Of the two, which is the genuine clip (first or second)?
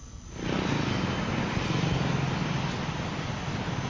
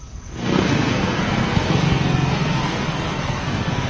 first